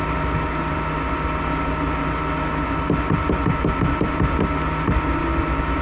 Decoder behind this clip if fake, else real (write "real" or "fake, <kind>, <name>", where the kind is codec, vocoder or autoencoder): real